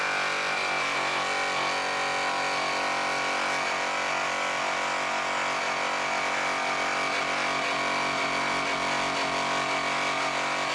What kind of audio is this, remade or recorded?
recorded